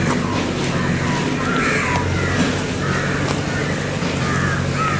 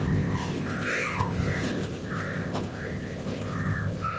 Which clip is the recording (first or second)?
first